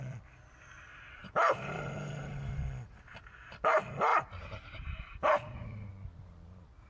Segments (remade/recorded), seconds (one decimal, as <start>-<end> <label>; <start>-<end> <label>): 0.0-1.2 recorded; 1.2-2.6 remade; 2.6-4.1 recorded; 4.1-5.9 remade; 5.9-6.9 recorded